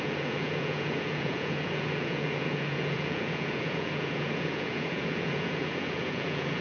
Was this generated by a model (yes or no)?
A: yes